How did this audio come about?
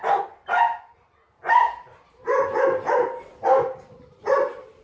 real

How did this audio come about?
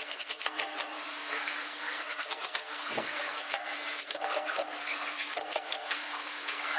fake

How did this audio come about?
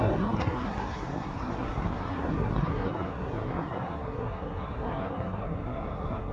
fake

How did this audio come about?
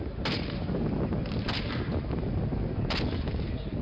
real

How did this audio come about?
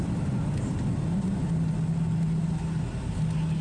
real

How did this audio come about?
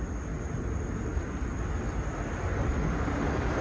real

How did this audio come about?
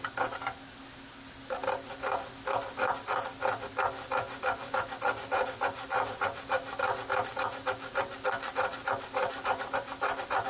real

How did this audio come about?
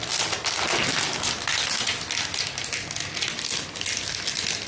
real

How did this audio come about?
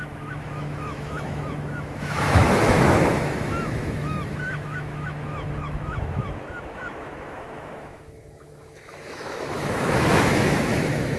fake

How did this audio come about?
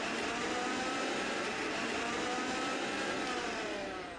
fake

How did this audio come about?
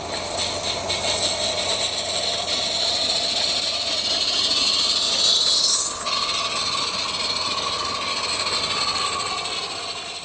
real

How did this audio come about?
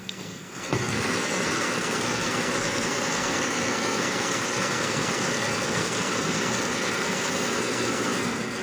fake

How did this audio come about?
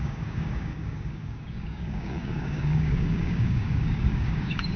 fake